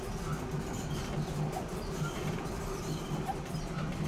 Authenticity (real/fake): real